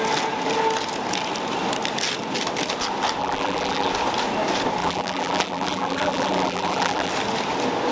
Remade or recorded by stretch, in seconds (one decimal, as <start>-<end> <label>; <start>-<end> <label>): 0.0-3.2 recorded; 3.2-3.9 remade; 3.9-4.8 recorded; 4.8-7.1 remade; 7.1-7.9 recorded